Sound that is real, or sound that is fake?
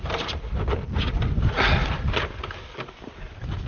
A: real